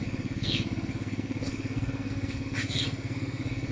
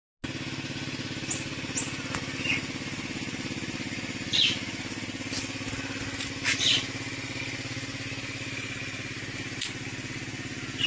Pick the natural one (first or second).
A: second